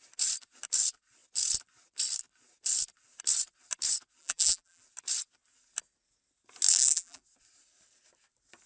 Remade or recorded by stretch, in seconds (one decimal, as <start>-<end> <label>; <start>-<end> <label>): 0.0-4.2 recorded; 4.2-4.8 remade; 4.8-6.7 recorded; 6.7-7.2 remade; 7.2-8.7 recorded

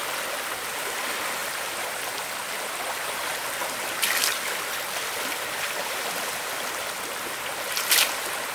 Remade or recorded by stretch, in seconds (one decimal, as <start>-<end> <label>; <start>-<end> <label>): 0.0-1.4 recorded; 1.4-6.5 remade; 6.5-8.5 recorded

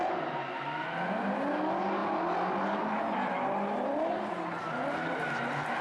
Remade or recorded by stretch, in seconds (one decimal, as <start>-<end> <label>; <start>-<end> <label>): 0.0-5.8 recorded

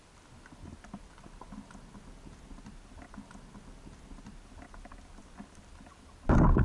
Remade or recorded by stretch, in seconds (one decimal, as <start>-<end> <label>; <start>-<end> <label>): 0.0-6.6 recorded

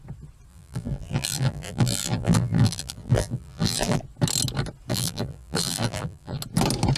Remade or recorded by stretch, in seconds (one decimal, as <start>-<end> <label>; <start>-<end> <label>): 0.0-0.5 recorded; 0.5-4.0 remade; 4.0-4.9 recorded; 4.9-6.4 remade; 6.4-7.0 recorded

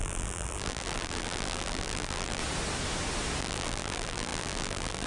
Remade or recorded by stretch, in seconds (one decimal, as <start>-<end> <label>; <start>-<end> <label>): 0.0-2.4 remade; 2.4-3.4 recorded; 3.4-5.1 remade

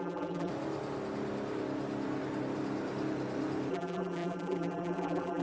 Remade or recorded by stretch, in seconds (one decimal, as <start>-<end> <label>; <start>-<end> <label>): 0.0-0.5 remade; 0.5-3.7 recorded; 3.7-5.4 remade

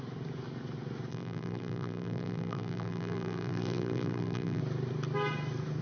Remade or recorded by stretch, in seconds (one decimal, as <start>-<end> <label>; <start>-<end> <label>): 0.0-1.1 recorded; 1.1-4.6 remade; 4.6-5.8 recorded